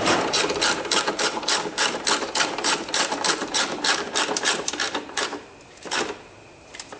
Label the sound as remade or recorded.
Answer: remade